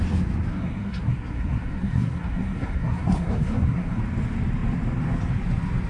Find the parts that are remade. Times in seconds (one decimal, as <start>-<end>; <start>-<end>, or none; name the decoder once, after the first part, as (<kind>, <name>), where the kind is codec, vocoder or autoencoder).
0.5-4.0 (codec, SNAC)